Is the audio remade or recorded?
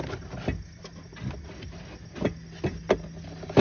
recorded